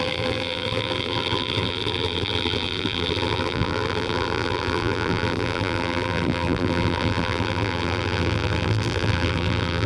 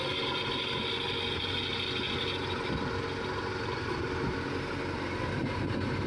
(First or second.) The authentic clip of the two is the second